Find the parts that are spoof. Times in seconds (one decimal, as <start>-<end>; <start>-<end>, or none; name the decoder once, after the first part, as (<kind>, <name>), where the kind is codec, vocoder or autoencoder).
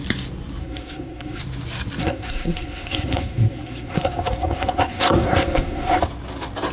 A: 0.6-1.4 (codec, SNAC); 2.0-6.0